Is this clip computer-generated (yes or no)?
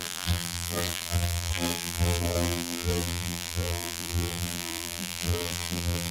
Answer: yes